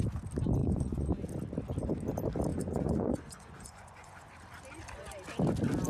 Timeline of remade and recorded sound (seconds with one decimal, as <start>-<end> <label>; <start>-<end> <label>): 0.0-0.6 recorded; 0.6-1.2 remade; 1.2-2.5 recorded; 2.5-4.3 remade; 4.3-5.9 recorded